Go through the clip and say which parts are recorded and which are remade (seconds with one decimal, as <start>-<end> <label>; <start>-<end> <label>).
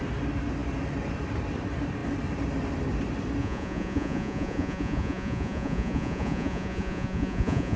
0.0-3.4 recorded; 3.4-7.8 remade